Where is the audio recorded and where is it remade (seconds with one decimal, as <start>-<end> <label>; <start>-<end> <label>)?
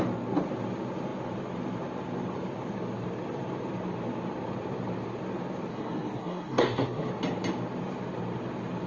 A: 0.0-5.7 recorded; 5.7-7.1 remade; 7.1-8.9 recorded